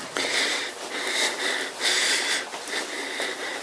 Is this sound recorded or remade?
recorded